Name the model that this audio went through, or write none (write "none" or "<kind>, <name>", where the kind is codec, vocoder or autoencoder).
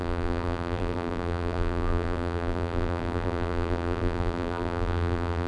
vocoder, BigVGAN v2